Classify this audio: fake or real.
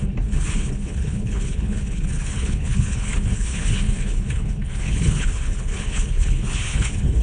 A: fake